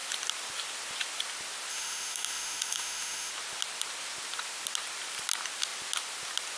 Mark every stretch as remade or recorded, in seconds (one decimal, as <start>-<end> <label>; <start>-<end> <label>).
0.0-1.7 recorded; 1.7-3.3 remade; 3.3-6.6 recorded